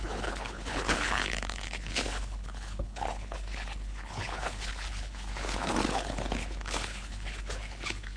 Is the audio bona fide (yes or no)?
no